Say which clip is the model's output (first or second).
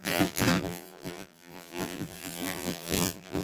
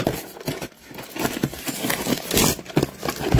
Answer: first